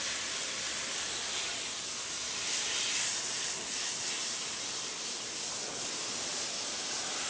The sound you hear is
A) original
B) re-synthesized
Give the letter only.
A